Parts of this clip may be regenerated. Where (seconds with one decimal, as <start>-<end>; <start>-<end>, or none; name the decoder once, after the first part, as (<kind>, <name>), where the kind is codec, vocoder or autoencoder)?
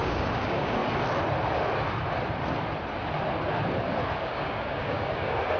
0.0-0.8 (codec, DAC); 4.2-5.6